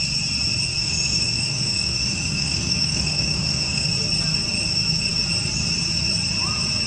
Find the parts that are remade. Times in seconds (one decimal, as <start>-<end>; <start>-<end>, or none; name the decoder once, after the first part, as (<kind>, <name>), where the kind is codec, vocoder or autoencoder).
0.8-3.9 (autoencoder, DAC-VAE)